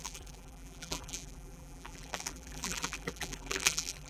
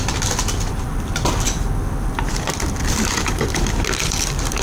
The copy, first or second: first